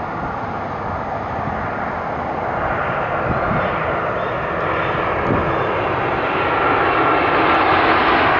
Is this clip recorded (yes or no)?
yes